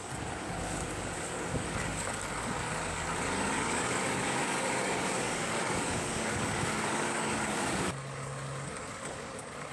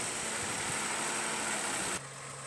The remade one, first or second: first